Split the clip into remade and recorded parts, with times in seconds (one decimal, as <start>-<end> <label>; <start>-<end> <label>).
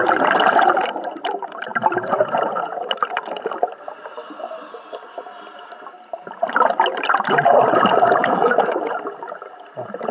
0.0-8.2 recorded; 8.2-8.8 remade; 8.8-10.1 recorded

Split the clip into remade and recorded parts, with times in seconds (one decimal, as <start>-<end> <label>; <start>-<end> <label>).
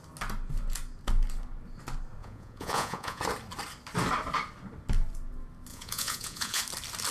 0.0-2.2 recorded; 2.2-3.2 remade; 3.2-5.7 recorded; 5.7-6.6 remade; 6.6-7.1 recorded